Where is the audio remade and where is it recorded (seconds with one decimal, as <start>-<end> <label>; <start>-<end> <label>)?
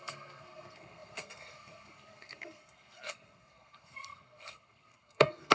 0.0-5.5 remade